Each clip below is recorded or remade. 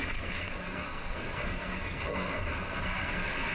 remade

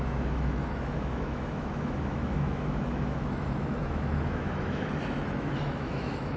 remade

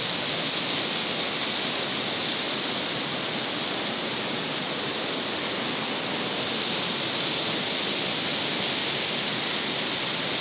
recorded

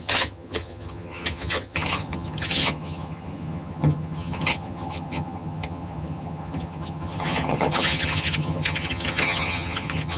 remade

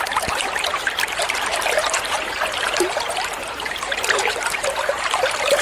remade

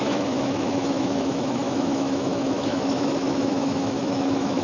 remade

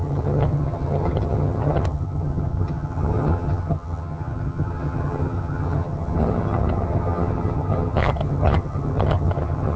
remade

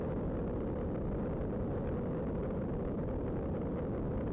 recorded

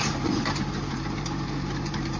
remade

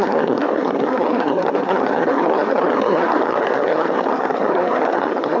remade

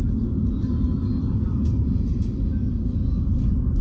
recorded